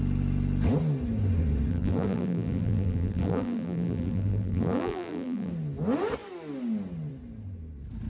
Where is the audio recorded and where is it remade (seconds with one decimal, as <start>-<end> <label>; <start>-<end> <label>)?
0.0-1.7 recorded; 1.7-5.5 remade; 5.5-8.1 recorded

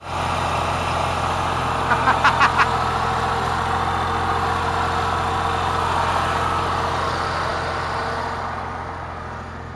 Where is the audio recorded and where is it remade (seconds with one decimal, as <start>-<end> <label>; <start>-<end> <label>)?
0.0-7.5 recorded; 7.5-8.0 remade; 8.0-9.8 recorded